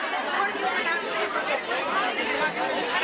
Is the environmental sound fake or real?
real